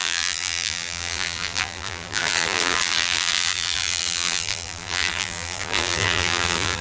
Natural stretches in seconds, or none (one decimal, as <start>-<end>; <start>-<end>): none